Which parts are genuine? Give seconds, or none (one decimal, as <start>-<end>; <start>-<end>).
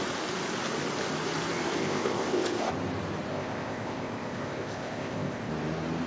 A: 0.0-1.8; 2.7-3.3; 5.5-6.1